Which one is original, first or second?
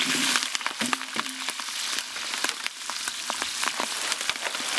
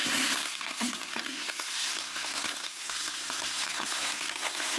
first